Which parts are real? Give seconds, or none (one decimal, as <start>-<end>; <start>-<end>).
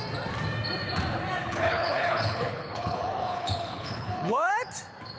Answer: 0.0-1.4; 4.5-5.2